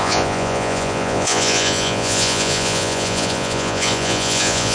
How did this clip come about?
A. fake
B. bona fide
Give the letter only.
A